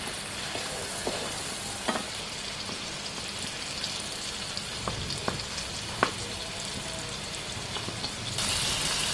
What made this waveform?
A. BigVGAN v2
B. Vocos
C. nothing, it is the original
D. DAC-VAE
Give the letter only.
C